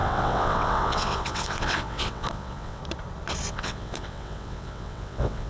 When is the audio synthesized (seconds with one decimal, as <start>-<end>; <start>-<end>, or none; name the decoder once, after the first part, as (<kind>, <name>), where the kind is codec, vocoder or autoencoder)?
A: 0.0-2.8 (vocoder, WaveNeXt); 3.5-5.5